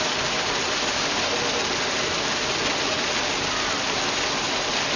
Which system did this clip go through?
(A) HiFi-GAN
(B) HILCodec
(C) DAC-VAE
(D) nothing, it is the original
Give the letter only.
D